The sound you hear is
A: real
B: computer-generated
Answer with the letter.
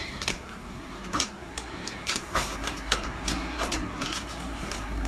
B